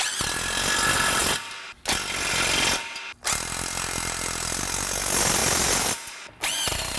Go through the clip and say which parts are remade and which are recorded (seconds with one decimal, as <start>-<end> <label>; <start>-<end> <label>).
0.0-7.0 recorded